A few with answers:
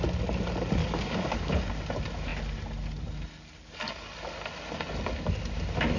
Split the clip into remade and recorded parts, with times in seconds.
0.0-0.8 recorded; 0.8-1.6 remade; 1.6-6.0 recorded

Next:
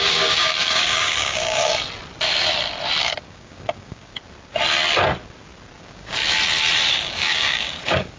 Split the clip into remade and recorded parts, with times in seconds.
0.0-1.7 remade; 1.7-3.0 recorded; 3.0-4.1 remade; 4.1-5.8 recorded; 5.8-6.2 remade; 6.2-6.9 recorded; 6.9-8.2 remade

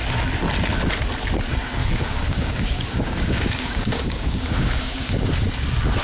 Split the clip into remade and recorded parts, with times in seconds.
0.0-1.8 recorded; 1.8-5.4 remade; 5.4-6.0 recorded